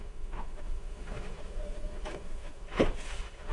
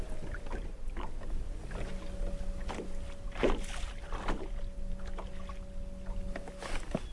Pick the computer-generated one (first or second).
first